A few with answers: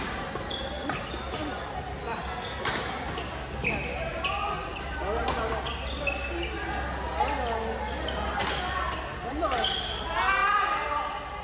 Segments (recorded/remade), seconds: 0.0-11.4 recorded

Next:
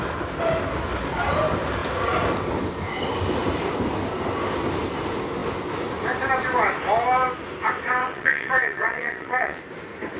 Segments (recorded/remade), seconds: 0.0-8.0 recorded; 8.0-9.6 remade; 9.6-10.2 recorded

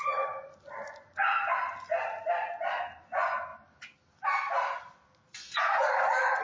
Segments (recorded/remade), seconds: 0.0-6.4 recorded

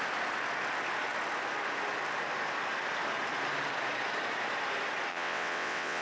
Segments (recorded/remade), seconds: 0.0-5.1 recorded; 5.1-6.0 remade

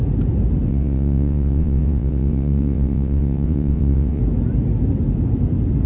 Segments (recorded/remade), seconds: 0.0-0.7 recorded; 0.7-4.2 remade; 4.2-5.9 recorded

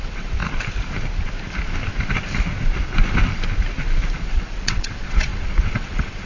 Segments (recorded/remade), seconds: 0.0-0.4 remade; 0.4-4.2 recorded; 4.2-6.3 remade

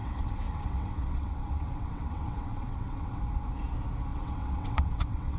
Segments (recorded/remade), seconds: 0.0-3.2 remade; 3.2-4.1 recorded; 4.1-5.4 remade

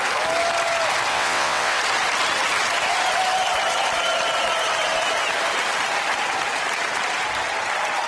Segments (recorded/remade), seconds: 0.0-1.1 recorded; 1.1-1.8 remade; 1.8-8.1 recorded